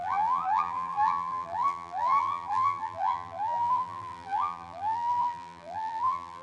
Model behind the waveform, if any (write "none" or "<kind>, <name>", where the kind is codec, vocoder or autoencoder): vocoder, BigVGAN v2